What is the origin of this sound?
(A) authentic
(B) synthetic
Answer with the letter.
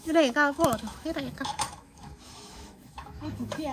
B